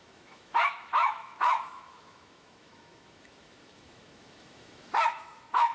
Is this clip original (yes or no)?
no